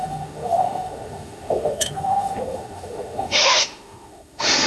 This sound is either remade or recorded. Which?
remade